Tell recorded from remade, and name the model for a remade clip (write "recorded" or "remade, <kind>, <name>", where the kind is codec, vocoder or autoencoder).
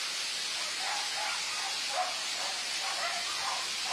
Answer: recorded